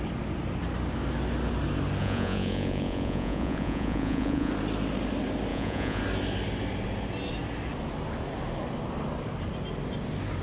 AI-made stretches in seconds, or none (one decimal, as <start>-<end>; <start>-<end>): 2.0-4.5; 5.5-6.0